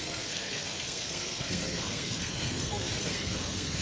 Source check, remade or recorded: remade